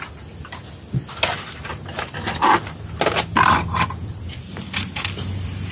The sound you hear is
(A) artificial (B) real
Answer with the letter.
B